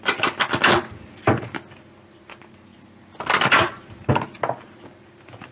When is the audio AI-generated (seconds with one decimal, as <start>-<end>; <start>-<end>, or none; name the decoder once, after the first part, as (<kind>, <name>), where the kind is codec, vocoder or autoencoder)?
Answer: none